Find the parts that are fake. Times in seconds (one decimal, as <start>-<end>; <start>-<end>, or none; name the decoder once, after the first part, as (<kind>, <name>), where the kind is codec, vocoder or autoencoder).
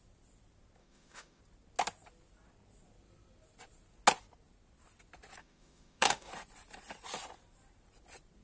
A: 0.8-1.4 (autoencoder, DAC-VAE); 5.4-6.3